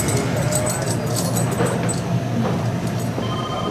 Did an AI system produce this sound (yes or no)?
no